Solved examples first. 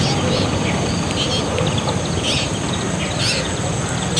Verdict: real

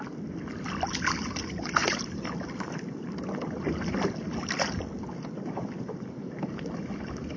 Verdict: real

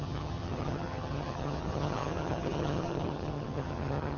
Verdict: fake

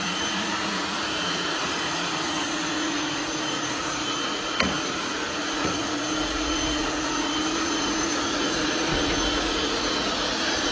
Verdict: fake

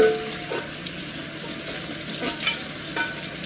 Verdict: real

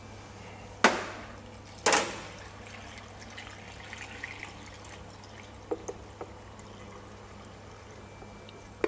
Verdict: real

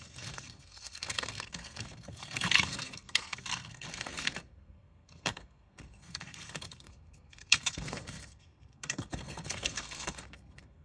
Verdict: fake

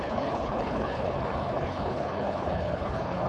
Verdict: fake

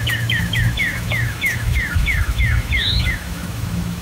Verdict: fake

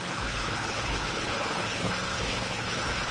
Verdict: fake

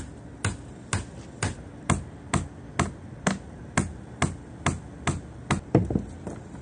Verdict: real